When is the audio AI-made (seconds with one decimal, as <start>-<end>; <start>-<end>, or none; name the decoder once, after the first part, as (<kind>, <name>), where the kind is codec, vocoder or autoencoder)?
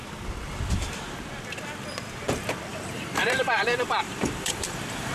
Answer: 2.7-5.1 (vocoder, BigVGAN v2)